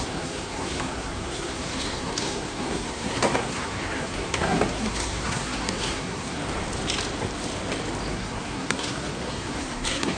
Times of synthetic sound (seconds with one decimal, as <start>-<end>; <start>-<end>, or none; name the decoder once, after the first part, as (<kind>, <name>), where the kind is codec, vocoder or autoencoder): 0.0-6.4 (codec, SNAC); 8.1-10.2